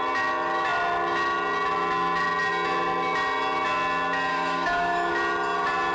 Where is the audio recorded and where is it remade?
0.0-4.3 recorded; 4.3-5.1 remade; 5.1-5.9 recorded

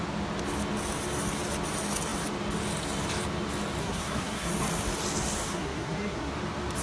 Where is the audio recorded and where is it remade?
0.0-3.8 recorded; 3.8-4.5 remade; 4.5-5.5 recorded; 5.5-6.3 remade; 6.3-6.8 recorded

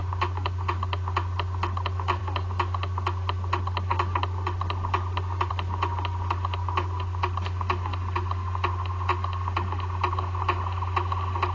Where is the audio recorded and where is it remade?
0.0-11.5 recorded

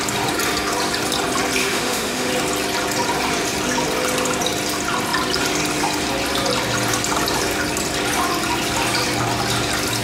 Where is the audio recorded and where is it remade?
0.0-1.6 recorded; 1.6-2.3 remade; 2.3-10.0 recorded

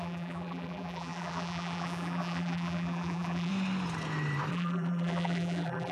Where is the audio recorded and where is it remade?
0.0-3.5 remade; 3.5-4.5 recorded; 4.5-5.9 remade

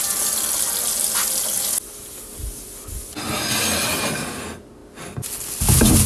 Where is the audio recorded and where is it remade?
0.0-6.1 recorded